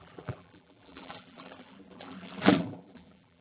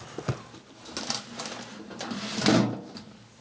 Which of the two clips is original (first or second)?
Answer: second